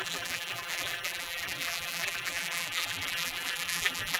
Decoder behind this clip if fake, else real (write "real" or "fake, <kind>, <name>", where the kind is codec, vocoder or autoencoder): fake, vocoder, BigVGAN v2